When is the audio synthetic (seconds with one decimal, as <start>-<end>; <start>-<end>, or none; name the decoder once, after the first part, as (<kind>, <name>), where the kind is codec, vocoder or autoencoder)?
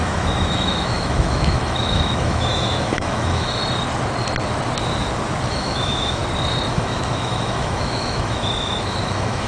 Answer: 0.0-3.6 (autoencoder, DAC-VAE); 5.5-6.2; 6.7-9.5